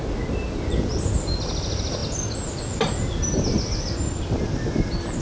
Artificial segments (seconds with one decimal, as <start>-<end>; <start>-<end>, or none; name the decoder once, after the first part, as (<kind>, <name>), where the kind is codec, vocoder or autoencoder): none